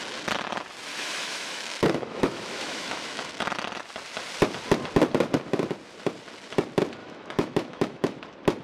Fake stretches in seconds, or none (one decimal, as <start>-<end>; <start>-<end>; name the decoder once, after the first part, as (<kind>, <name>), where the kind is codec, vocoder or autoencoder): 0.9-3.3 (autoencoder, DAC-VAE); 7.0-8.2

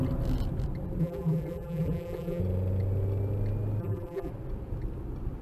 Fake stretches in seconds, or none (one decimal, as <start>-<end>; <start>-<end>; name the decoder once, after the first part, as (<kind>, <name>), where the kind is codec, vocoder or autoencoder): 1.0-2.4 (vocoder, BigVGAN v2); 3.8-4.3

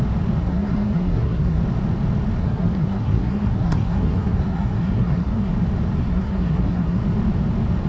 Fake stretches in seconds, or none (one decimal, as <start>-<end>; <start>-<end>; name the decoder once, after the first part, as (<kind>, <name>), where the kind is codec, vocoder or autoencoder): 0.4-1.6 (codec, SNAC); 2.4-5.5; 6.0-7.0

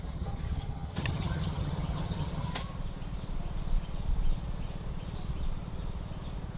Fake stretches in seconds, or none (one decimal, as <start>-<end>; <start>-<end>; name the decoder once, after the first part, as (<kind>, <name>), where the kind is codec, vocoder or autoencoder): 0.0-2.5 (vocoder, HiFi-GAN)

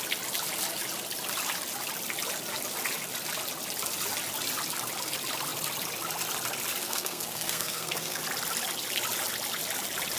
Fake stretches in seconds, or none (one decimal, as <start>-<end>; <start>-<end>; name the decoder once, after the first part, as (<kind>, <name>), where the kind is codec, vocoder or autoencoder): 6.8-8.2 (codec, SNAC)

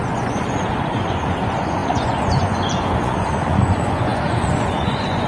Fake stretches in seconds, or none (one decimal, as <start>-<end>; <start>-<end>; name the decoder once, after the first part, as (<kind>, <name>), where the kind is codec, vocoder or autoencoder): 0.0-5.3 (vocoder, Vocos)

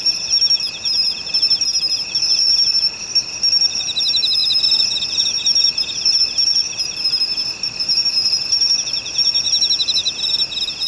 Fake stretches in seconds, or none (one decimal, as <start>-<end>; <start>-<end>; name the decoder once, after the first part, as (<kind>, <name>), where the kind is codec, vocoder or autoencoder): 4.4-6.2 (vocoder, BigVGAN v2)